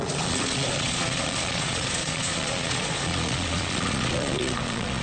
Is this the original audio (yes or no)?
no